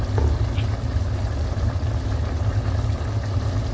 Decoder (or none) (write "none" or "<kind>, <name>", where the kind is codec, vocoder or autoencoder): none